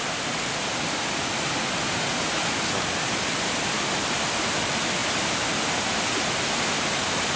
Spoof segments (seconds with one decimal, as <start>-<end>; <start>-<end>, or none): none